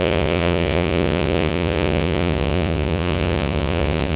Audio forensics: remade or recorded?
remade